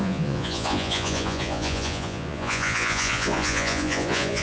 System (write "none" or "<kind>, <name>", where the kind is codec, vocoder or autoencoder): vocoder, Vocos